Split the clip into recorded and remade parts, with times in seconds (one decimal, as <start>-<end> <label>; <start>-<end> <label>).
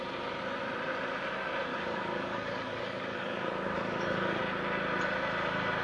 0.0-1.7 recorded; 1.7-4.4 remade; 4.4-5.8 recorded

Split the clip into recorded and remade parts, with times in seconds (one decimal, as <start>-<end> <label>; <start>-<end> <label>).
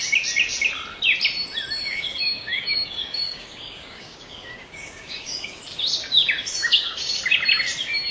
0.0-1.8 recorded; 1.8-5.6 remade; 5.6-6.6 recorded; 6.6-7.2 remade; 7.2-8.1 recorded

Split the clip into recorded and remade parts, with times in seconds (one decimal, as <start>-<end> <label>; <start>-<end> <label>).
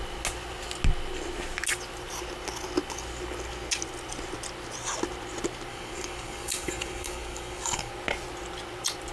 0.0-5.7 recorded; 5.7-7.9 remade; 7.9-9.1 recorded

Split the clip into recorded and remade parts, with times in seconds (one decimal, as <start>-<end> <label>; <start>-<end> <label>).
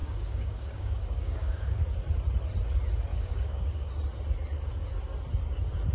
0.0-1.8 remade; 1.8-3.1 recorded; 3.1-3.9 remade; 3.9-5.9 recorded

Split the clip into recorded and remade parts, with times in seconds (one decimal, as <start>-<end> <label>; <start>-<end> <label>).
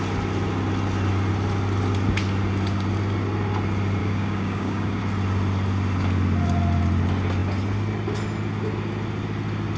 0.0-4.0 recorded; 4.0-5.0 remade; 5.0-9.8 recorded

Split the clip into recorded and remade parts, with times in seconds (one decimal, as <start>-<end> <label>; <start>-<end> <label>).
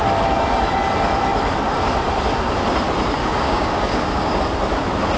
0.0-3.2 recorded; 3.2-4.4 remade; 4.4-5.2 recorded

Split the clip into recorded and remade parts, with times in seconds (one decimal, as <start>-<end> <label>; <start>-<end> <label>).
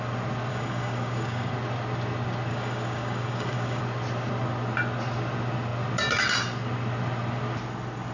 0.0-0.5 recorded; 0.5-1.5 remade; 1.5-2.5 recorded; 2.5-3.8 remade; 3.8-8.1 recorded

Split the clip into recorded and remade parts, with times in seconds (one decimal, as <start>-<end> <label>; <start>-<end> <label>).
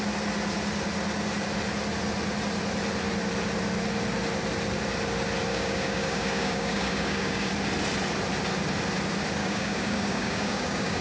0.0-5.5 recorded; 5.5-7.5 remade; 7.5-9.4 recorded; 9.4-11.0 remade